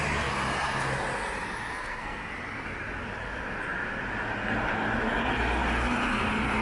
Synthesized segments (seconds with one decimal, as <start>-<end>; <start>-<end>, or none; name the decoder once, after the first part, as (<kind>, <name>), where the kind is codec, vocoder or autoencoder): 1.7-2.3 (codec, SNAC)